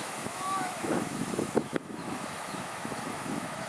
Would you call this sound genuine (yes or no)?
no